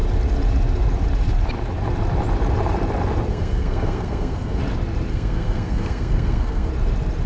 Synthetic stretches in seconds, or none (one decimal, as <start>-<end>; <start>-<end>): 3.3-4.6; 5.1-6.7